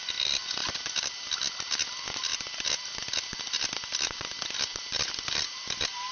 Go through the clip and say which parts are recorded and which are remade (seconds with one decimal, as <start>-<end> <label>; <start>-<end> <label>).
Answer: 0.0-0.6 recorded; 0.6-1.7 remade; 1.7-4.7 recorded; 4.7-6.1 remade